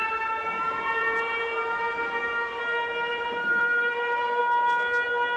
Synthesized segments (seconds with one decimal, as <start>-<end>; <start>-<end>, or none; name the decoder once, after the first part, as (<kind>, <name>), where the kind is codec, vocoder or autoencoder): 0.0-2.6 (vocoder, BigVGAN v2); 3.1-4.4